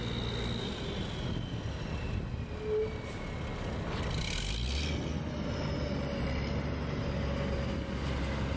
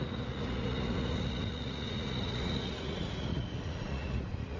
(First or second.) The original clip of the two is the first